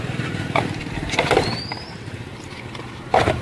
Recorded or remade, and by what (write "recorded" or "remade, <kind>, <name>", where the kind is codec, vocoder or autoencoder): remade, vocoder, BigVGAN v2